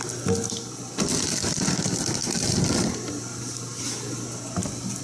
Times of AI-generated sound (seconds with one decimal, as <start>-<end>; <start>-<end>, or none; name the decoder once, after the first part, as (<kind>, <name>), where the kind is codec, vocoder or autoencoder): none